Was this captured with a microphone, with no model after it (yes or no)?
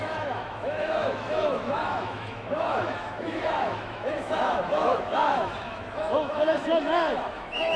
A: no